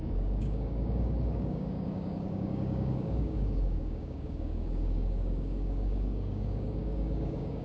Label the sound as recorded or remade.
remade